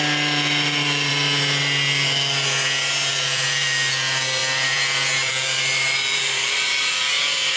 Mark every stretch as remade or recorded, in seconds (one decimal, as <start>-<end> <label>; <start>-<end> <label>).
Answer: 0.0-1.1 remade; 1.1-3.1 recorded; 3.1-7.6 remade